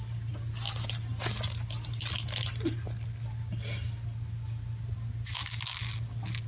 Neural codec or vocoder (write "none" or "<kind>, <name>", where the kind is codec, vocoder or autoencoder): none